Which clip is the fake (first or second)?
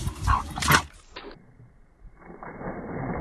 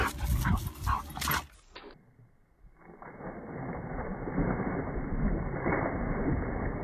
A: first